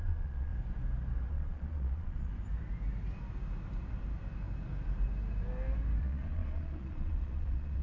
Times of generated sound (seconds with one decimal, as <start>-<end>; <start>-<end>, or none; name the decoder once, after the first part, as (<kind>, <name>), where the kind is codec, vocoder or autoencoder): 0.0-0.5 (vocoder, Vocos); 1.3-2.3; 6.0-7.8